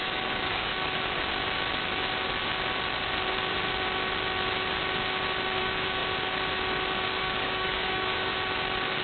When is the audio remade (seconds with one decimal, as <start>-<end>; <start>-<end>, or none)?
0.0-0.7; 5.6-6.0; 7.2-8.3